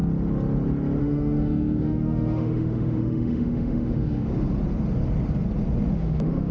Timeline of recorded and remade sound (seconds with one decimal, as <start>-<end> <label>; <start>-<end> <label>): 0.0-1.0 recorded; 1.0-4.3 remade; 4.3-5.9 recorded; 5.9-6.5 remade